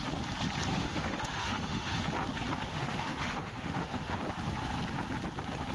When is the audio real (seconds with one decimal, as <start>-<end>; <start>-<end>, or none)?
0.0-0.7; 1.9-2.7; 4.2-5.7